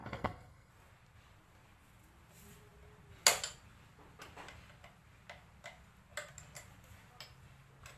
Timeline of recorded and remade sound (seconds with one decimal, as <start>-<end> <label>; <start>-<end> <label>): 0.0-0.7 remade; 0.7-8.0 recorded